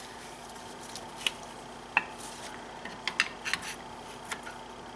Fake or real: real